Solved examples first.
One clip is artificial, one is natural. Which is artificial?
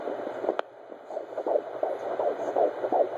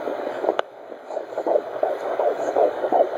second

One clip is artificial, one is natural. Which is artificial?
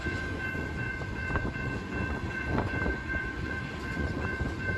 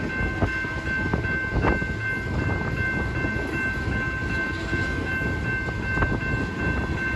first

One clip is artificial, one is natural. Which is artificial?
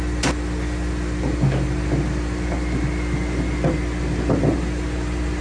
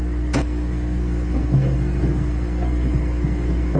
second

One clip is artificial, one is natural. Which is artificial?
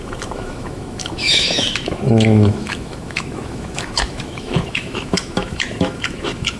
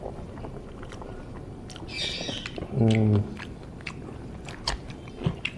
first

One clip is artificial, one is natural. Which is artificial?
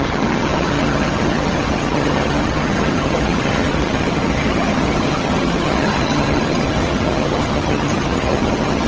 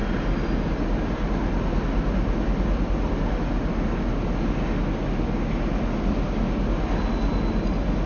first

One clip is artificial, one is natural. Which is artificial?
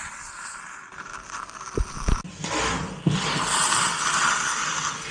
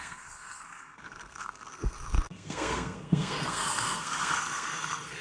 second